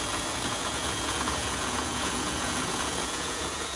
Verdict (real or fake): fake